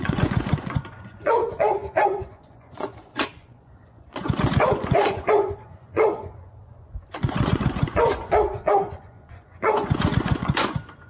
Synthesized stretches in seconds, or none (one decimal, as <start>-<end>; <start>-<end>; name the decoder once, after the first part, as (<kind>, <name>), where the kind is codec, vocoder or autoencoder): 0.0-11.1 (vocoder, Vocos)